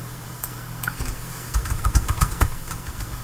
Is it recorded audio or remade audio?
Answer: remade